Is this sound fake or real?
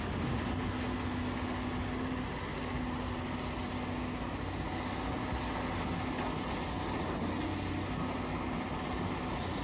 real